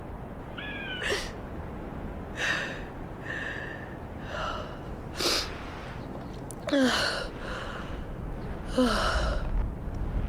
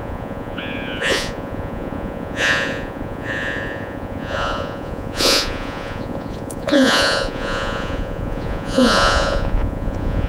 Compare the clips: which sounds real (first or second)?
first